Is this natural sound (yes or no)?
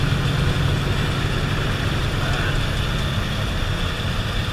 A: yes